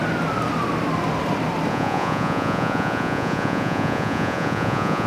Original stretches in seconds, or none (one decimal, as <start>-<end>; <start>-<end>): 0.0-1.7